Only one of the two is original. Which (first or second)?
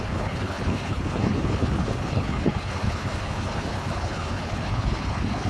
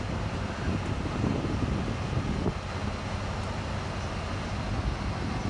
second